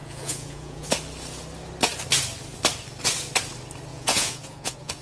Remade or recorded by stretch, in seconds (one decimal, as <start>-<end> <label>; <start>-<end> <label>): 0.0-0.9 remade; 0.9-3.9 recorded; 3.9-5.0 remade